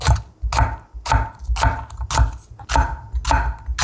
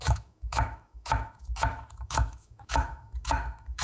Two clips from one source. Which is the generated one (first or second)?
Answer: second